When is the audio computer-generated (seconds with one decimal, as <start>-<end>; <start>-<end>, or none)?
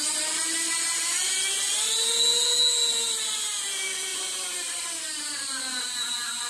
4.1-6.5